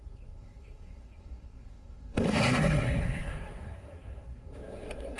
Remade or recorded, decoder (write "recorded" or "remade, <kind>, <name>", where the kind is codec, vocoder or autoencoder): remade, codec, SNAC